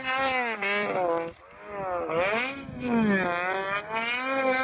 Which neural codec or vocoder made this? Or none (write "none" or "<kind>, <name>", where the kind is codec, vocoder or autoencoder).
none